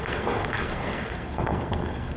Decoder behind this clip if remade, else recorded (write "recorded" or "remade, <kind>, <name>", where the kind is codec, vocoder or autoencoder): remade, codec, SNAC